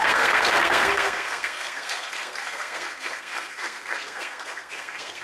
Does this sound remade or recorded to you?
remade